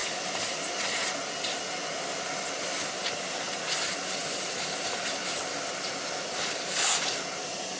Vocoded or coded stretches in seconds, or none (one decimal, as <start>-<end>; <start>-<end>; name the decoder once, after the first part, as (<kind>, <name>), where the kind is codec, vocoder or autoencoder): none